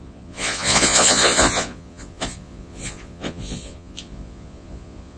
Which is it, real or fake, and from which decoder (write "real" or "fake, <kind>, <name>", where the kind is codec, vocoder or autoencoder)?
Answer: fake, vocoder, Vocos